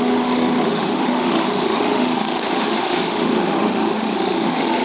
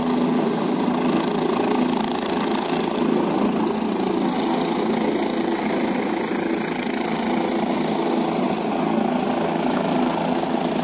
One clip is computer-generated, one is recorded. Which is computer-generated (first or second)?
first